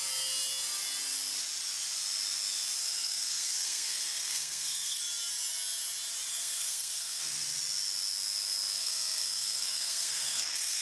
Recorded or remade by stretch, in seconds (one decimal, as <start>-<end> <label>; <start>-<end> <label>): 0.0-2.8 recorded; 2.8-5.0 remade; 5.0-6.3 recorded; 6.3-7.2 remade; 7.2-8.8 recorded; 8.8-10.8 remade